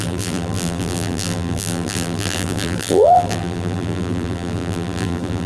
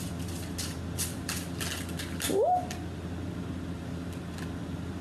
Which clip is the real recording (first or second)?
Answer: second